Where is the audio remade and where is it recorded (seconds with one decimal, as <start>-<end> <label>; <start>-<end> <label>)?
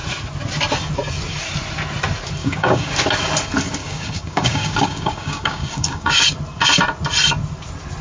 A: 0.0-2.4 recorded; 2.4-2.9 remade; 2.9-3.8 recorded; 3.8-6.1 remade; 6.1-8.0 recorded